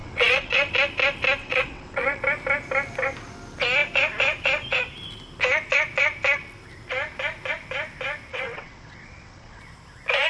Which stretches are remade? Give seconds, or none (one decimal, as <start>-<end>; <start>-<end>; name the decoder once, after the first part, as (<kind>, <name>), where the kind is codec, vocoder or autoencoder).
0.0-0.7 (vocoder, WaveNeXt); 1.4-2.2; 8.3-9.6